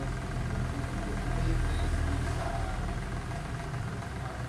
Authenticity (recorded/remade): recorded